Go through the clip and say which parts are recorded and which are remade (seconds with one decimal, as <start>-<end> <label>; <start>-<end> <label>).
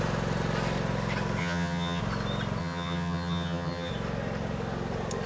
0.0-1.4 recorded; 1.4-2.0 remade; 2.0-2.6 recorded; 2.6-3.9 remade; 3.9-5.3 recorded